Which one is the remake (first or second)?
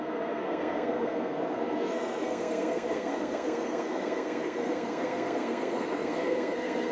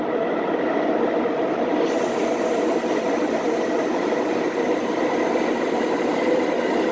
first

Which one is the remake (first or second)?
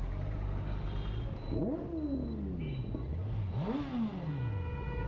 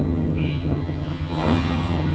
second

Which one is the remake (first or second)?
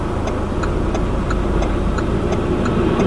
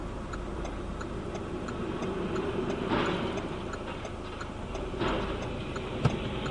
second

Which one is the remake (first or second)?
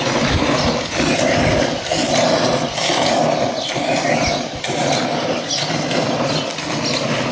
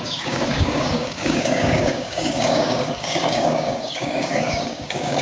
second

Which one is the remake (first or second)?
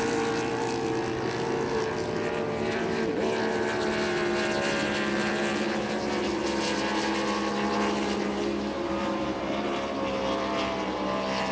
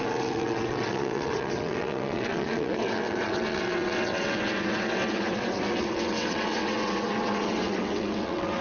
second